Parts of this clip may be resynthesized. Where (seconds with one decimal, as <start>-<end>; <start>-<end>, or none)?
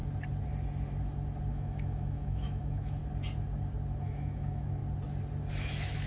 1.5-3.0; 4.0-4.8; 5.5-6.1